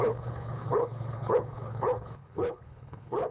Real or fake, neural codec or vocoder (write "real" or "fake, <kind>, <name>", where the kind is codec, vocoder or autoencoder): fake, codec, HILCodec